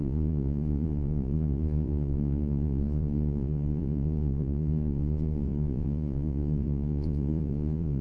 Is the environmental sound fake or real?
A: fake